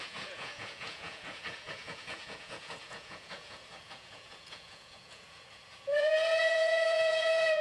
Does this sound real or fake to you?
fake